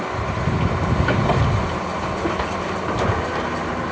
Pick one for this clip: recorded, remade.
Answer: recorded